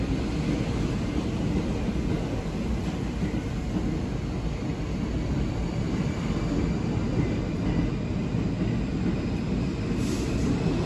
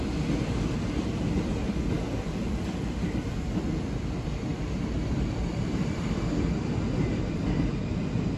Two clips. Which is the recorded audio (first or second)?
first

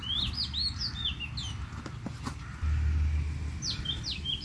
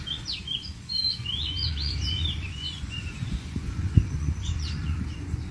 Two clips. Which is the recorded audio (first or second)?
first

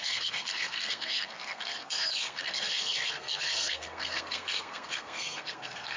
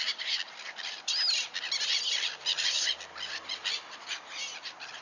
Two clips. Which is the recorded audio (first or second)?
second